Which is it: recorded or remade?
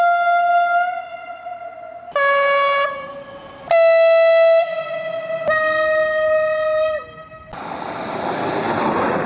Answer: recorded